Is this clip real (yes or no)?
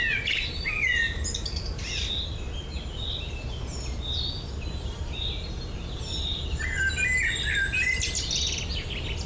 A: yes